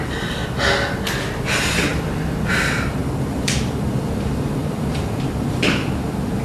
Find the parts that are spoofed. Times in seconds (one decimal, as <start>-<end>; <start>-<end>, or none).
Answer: 0.0-0.4; 1.4-1.9; 2.5-6.4